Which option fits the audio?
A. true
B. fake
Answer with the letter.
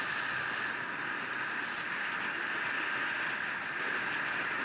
A